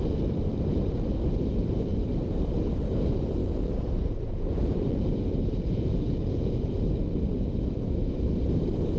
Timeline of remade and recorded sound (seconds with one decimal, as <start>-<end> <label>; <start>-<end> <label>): 0.0-3.4 recorded; 3.4-6.8 remade; 6.8-9.0 recorded